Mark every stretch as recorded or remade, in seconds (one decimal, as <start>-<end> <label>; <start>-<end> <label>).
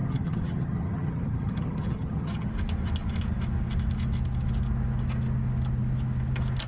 0.0-2.5 remade; 2.5-6.7 recorded